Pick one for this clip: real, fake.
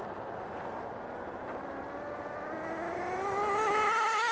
real